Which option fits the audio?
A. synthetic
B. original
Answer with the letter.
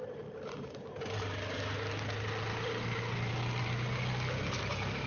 B